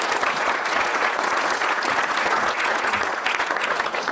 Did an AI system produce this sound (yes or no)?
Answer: yes